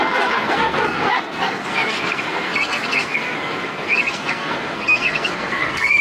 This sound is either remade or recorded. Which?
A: remade